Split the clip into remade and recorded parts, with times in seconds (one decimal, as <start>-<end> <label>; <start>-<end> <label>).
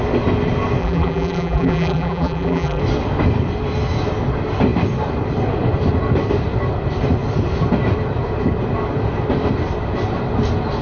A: 0.0-0.8 recorded; 0.8-2.8 remade; 2.8-10.8 recorded